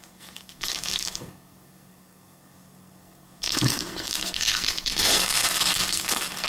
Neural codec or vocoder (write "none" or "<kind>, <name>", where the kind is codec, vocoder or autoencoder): codec, SNAC